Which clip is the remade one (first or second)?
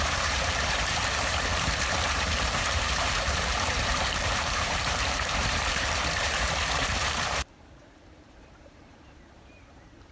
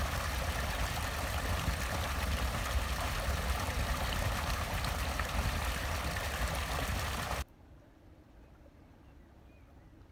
first